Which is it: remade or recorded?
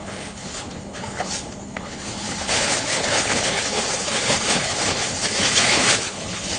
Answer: remade